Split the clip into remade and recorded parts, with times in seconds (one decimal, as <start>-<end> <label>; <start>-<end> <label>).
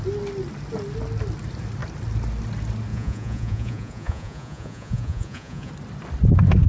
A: 0.0-2.9 recorded; 2.9-5.7 remade; 5.7-6.7 recorded